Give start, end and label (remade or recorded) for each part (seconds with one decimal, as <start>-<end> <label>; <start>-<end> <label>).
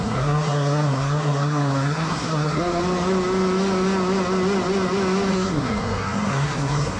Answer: 0.0-2.8 remade; 2.8-5.3 recorded; 5.3-7.0 remade